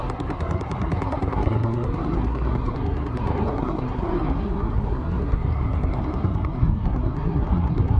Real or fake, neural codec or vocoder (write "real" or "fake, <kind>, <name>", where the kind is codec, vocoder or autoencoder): fake, codec, SNAC